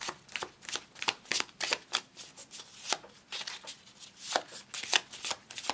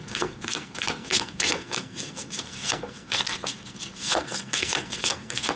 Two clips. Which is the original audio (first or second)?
first